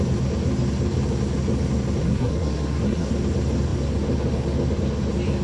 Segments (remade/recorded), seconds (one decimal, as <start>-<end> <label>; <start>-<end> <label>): 0.0-2.0 recorded; 2.0-3.1 remade; 3.1-5.4 recorded